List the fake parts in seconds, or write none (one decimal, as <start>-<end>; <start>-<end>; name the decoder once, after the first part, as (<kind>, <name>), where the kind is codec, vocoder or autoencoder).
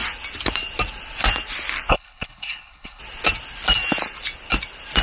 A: 1.9-3.0 (codec, HILCodec)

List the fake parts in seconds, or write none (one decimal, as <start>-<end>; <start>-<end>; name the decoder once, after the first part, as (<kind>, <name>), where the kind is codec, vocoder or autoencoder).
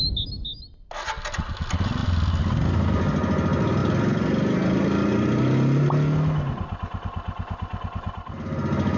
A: none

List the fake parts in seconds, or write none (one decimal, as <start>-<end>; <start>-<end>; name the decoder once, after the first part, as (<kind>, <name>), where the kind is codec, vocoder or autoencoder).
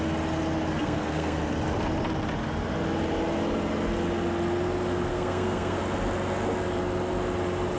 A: 0.8-1.4 (codec, SNAC); 5.1-5.8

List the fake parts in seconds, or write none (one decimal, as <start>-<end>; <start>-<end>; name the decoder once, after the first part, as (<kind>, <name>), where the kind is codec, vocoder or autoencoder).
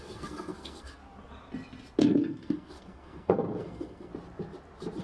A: 0.0-1.0 (codec, SNAC); 2.0-4.1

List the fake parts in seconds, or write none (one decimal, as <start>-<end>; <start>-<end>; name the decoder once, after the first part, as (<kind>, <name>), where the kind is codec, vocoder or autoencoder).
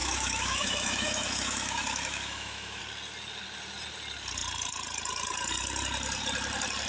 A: 0.0-2.8 (autoencoder, DAC-VAE)